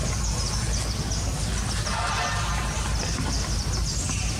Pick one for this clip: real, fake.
real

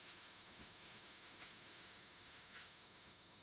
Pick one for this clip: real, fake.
fake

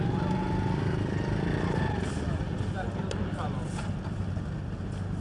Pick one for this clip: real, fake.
real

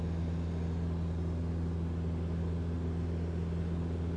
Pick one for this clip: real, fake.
real